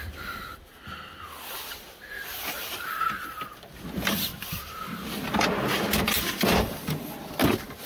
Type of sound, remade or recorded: recorded